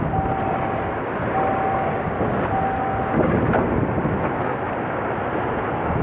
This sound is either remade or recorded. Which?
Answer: recorded